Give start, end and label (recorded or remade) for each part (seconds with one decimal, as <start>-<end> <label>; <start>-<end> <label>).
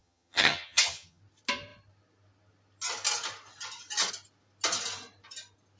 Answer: 0.0-1.2 remade; 1.2-5.8 recorded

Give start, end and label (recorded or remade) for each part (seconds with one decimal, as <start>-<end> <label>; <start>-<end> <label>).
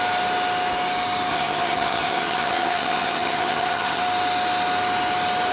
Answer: 0.0-1.3 recorded; 1.3-4.0 remade; 4.0-5.5 recorded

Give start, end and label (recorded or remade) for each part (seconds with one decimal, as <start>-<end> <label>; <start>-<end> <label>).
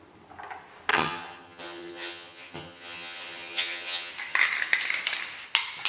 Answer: 0.0-0.9 recorded; 0.9-4.1 remade; 4.1-5.9 recorded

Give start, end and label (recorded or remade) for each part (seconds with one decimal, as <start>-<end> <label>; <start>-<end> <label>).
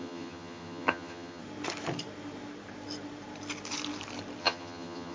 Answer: 0.0-1.4 remade; 1.4-4.4 recorded; 4.4-5.1 remade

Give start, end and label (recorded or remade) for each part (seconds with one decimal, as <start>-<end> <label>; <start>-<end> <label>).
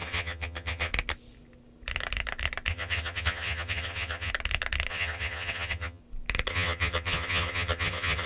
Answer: 0.0-0.9 remade; 0.9-2.7 recorded; 2.7-4.3 remade; 4.3-4.9 recorded; 4.9-6.0 remade; 6.0-6.5 recorded; 6.5-8.3 remade